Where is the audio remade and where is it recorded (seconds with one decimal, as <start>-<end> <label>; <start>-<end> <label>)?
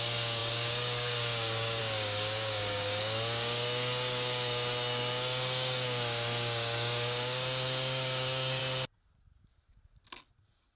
0.0-8.6 remade; 8.6-10.8 recorded